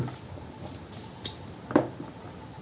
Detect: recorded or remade recorded